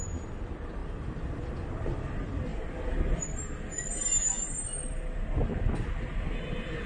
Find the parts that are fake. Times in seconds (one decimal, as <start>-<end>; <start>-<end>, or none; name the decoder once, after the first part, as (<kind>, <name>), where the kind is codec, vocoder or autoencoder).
0.0-2.5 (vocoder, BigVGAN v2)